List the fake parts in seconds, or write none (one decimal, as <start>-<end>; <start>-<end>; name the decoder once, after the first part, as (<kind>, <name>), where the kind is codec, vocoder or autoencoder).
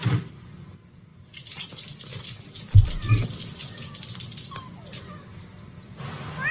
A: none